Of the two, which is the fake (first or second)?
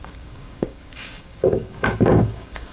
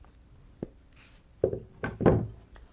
first